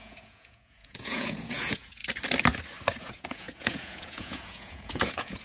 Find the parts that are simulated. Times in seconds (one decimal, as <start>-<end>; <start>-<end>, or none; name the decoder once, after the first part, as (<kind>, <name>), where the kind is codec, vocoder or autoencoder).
0.0-2.0 (vocoder, Vocos); 3.0-5.4